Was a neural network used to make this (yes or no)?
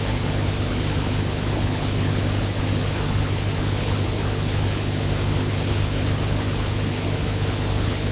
yes